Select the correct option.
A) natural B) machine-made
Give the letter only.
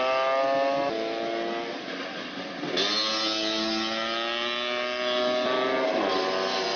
A